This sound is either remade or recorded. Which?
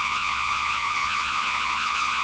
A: remade